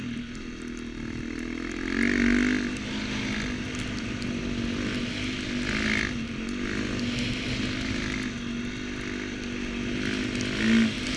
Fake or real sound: real